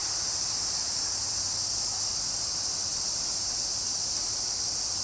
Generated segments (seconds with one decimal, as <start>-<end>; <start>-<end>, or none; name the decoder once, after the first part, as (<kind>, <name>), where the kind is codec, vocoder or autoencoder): 0.0-1.2 (vocoder, BigVGAN v2); 2.9-3.6